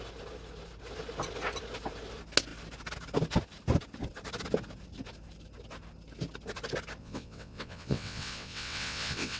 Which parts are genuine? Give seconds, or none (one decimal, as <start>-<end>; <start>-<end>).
0.0-7.0